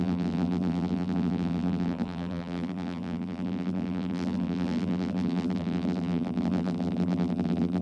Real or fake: fake